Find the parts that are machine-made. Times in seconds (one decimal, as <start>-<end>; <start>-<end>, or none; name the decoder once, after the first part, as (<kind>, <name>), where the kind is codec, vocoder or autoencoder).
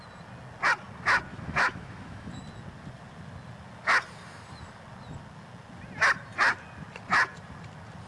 1.3-2.4 (autoencoder, DAC-VAE)